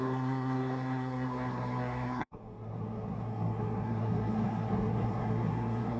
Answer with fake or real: fake